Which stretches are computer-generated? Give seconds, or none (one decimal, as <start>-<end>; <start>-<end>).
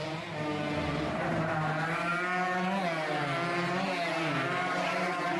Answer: 0.9-2.1; 4.1-5.4